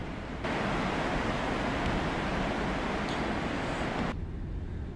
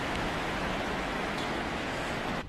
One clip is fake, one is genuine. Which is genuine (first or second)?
first